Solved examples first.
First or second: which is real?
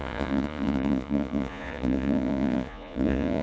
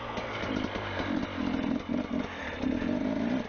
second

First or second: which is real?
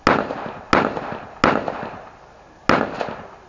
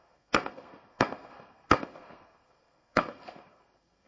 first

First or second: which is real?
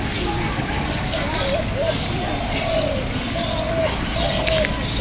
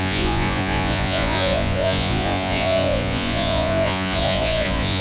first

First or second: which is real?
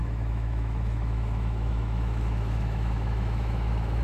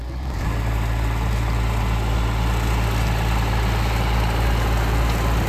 second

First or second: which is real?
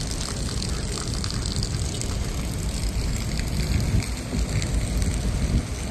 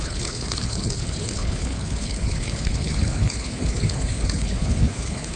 first